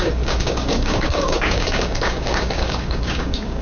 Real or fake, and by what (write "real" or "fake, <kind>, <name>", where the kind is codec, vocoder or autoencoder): fake, codec, DAC